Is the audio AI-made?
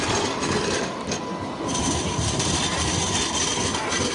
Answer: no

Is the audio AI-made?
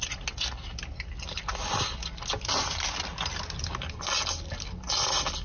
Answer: no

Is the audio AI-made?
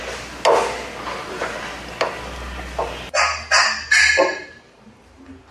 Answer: no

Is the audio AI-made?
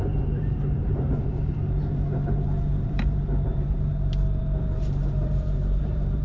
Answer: yes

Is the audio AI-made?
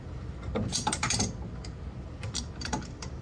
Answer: yes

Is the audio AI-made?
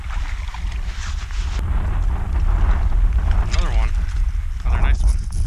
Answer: no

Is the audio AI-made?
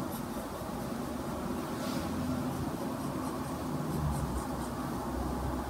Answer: no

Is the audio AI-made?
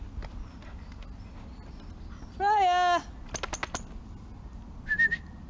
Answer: no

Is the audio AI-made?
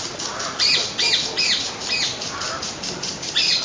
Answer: no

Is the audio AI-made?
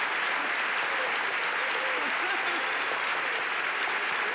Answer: no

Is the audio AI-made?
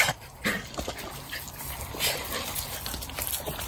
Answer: no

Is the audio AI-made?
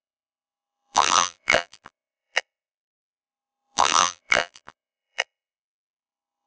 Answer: yes